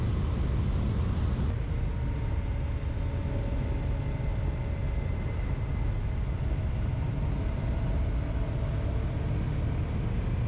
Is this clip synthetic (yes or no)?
no